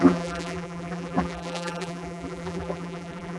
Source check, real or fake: fake